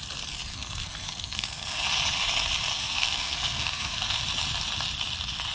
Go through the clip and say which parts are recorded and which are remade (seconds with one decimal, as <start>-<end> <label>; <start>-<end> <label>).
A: 0.0-0.5 recorded; 0.5-1.8 remade; 1.8-2.7 recorded; 2.7-4.2 remade; 4.2-5.5 recorded